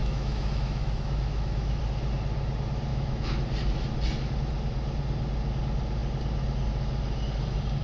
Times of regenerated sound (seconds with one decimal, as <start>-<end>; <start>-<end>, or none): 0.0-1.8; 2.9-3.4

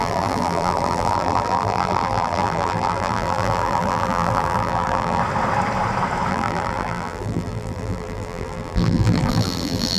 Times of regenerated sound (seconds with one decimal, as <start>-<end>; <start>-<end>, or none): 0.0-5.2; 6.3-10.0

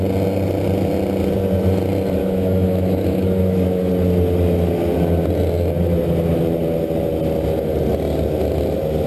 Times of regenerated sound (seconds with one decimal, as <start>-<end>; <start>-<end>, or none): 2.2-3.9

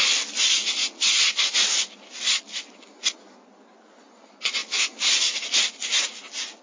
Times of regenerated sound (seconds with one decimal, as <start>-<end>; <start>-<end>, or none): none